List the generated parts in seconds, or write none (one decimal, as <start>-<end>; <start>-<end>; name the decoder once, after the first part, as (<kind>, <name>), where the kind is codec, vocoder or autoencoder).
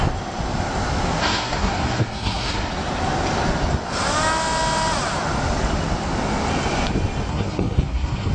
1.2-2.7 (codec, SNAC); 7.3-8.3